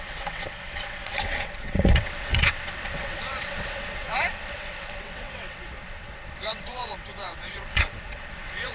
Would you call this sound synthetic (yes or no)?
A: yes